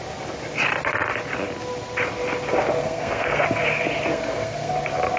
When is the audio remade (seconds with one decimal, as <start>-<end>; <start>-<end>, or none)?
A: 2.8-3.4; 4.1-4.7